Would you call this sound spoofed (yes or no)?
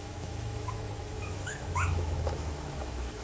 yes